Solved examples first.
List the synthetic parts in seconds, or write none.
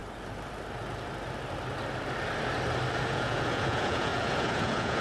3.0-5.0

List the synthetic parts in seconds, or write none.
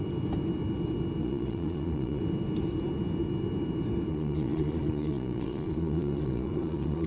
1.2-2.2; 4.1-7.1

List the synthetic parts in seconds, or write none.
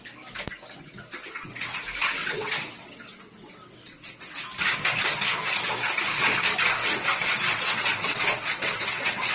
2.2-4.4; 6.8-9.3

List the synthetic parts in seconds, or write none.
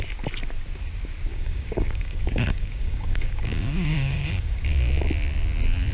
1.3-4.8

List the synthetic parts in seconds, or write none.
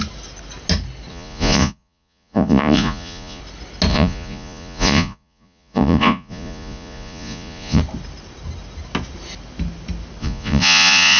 1.1-3.4; 3.9-7.8; 10.2-11.2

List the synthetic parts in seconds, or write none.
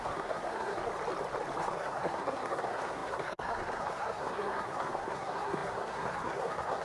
0.0-0.9; 1.6-6.8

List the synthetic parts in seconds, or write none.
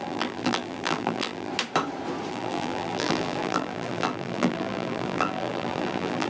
0.0-1.5; 2.3-6.3